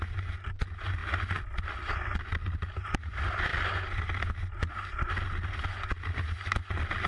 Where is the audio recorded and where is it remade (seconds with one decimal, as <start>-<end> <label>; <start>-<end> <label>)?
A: 0.0-7.1 recorded

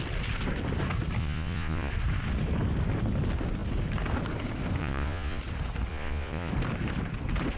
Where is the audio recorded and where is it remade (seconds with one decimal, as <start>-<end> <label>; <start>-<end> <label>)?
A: 0.0-1.2 recorded; 1.2-1.9 remade; 1.9-4.8 recorded; 4.8-5.4 remade; 5.4-5.9 recorded; 5.9-6.5 remade; 6.5-7.6 recorded